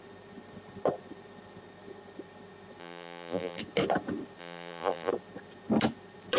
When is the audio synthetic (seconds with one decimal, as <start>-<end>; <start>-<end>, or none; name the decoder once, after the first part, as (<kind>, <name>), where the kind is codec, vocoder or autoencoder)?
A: 2.8-3.6 (vocoder, BigVGAN v2); 4.4-5.1